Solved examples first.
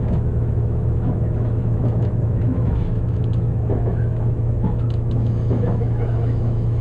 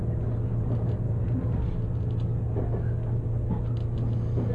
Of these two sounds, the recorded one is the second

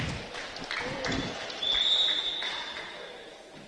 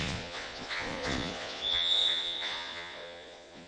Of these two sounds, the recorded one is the first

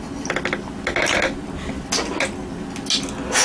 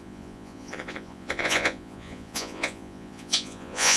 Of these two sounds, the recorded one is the first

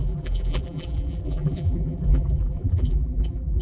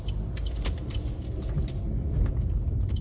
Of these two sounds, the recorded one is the second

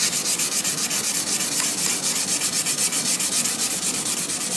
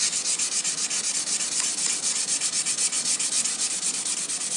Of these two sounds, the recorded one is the second